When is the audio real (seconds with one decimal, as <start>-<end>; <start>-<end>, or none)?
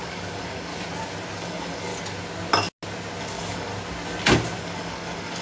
0.7-1.4; 1.9-3.2; 3.7-4.6